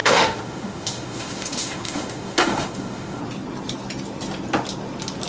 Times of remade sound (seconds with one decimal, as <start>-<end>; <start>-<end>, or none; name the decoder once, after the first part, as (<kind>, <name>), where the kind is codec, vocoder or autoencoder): 0.0-3.2 (autoencoder, DAC-VAE)